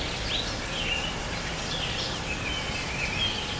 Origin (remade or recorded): recorded